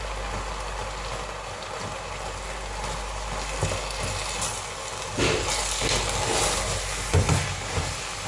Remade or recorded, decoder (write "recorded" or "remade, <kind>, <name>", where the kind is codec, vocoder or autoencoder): recorded